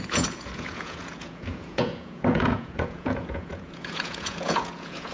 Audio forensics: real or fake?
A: fake